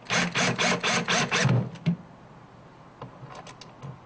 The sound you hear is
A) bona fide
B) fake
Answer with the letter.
A